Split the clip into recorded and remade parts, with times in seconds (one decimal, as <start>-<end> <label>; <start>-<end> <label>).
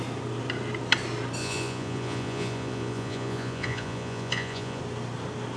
0.0-1.4 recorded; 1.4-4.8 remade; 4.8-5.6 recorded